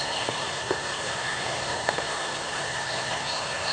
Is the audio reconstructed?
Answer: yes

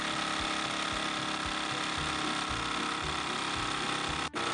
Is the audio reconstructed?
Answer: no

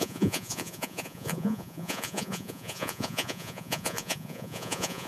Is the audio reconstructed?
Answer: yes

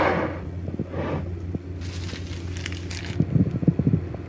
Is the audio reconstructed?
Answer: no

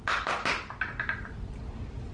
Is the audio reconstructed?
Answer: no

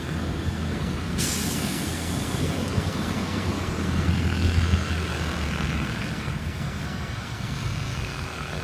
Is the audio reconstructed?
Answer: yes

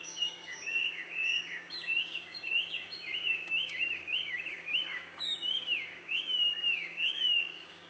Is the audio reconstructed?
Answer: yes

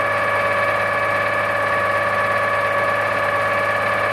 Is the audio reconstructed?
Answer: no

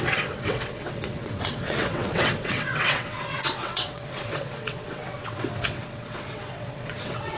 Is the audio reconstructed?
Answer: yes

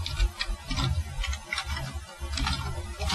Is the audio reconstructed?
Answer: no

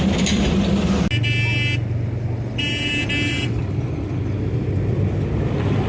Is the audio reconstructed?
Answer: no